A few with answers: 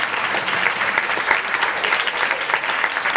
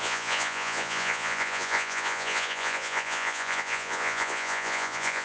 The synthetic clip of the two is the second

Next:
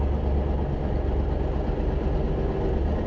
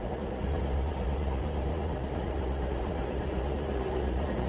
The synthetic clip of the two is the second